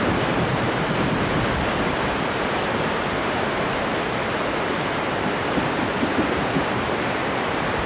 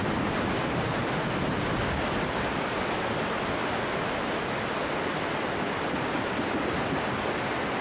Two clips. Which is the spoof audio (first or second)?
first